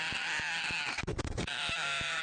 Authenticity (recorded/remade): recorded